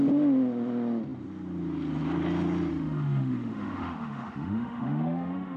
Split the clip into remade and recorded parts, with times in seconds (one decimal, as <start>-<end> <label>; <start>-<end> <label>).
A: 0.0-2.7 recorded; 2.7-5.6 remade